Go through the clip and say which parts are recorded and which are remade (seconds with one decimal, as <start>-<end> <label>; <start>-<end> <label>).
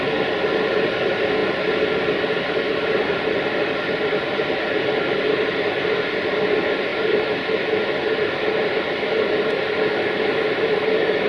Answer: 0.0-11.3 recorded